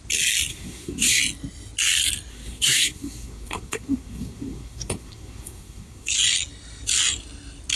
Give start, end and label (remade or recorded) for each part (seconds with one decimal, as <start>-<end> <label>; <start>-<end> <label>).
0.0-0.5 recorded; 0.5-1.2 remade; 1.2-2.3 recorded; 2.3-6.1 remade; 6.1-7.8 recorded